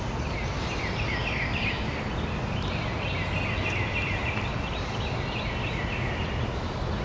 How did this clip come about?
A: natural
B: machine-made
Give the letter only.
A